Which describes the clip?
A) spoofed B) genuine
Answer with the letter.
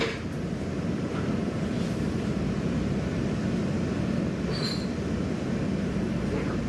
B